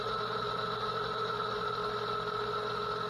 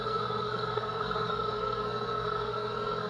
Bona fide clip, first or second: first